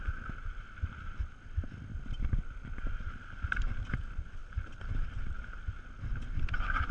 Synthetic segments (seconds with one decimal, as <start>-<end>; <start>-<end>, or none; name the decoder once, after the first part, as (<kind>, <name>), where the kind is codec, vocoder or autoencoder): none